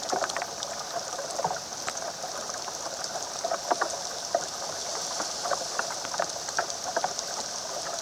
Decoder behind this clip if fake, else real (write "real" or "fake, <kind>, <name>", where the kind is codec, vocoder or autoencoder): real